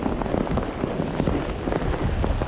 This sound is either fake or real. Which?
real